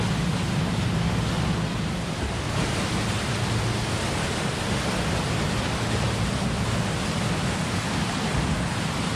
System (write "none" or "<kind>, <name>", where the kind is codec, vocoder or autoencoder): none